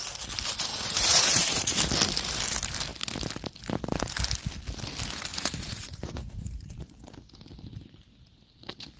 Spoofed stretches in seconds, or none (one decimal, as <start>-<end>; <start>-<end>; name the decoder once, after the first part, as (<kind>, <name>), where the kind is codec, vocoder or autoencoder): 0.7-1.8 (vocoder, Vocos); 5.3-6.9